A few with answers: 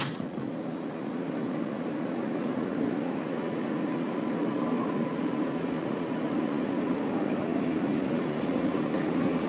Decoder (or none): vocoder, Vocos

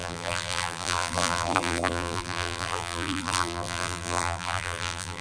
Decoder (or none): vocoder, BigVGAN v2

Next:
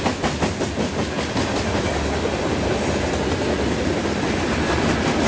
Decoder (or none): none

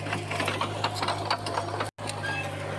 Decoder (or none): none